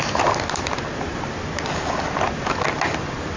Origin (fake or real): real